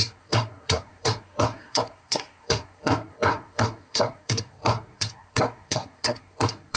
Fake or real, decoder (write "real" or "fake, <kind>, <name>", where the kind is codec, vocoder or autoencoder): fake, codec, SNAC